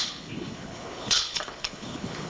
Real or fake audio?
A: fake